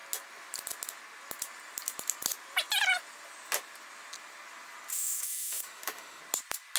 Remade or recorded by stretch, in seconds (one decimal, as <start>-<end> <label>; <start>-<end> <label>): 0.0-4.9 recorded; 4.9-6.2 remade; 6.2-6.8 recorded